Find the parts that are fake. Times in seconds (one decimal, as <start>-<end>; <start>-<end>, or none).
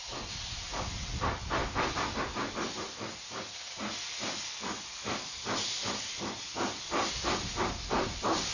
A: none